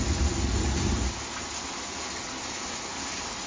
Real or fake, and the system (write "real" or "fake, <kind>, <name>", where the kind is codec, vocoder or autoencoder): real